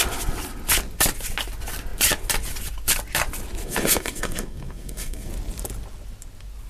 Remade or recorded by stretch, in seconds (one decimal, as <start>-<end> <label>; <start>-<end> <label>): 0.0-3.6 recorded; 3.6-5.3 remade; 5.3-6.7 recorded